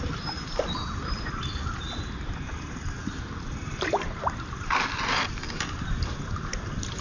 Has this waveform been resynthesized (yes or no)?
no